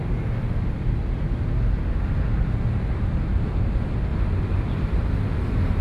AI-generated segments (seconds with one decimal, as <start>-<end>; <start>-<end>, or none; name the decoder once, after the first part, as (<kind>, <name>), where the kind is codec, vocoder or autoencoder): none